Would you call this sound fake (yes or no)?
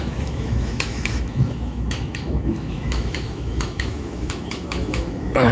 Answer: yes